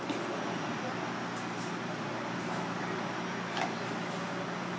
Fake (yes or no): no